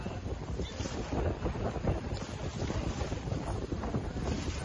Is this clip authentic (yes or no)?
no